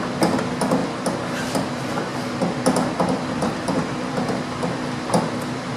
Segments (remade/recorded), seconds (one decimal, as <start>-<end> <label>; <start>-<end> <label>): 0.0-0.8 recorded; 0.8-1.5 remade; 1.5-2.1 recorded; 2.1-5.8 remade